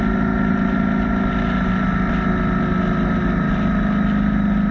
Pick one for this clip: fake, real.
real